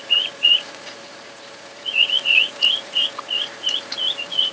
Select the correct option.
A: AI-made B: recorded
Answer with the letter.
A